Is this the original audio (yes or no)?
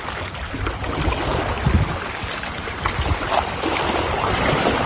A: no